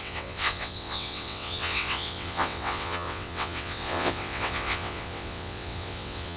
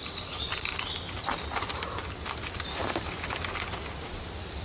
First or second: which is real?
second